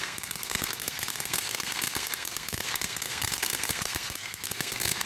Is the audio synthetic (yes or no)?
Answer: yes